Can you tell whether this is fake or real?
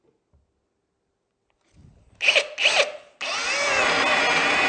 real